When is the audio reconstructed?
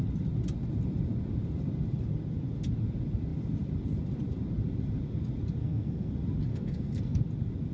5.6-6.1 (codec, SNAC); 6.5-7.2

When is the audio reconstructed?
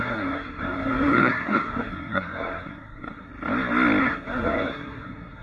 0.0-3.3 (codec, SNAC); 4.0-5.4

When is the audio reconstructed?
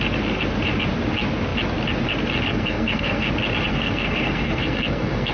2.5-3.3 (codec, SNAC); 3.7-5.3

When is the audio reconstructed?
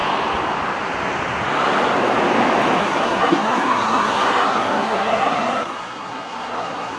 2.8-7.0 (codec, SNAC)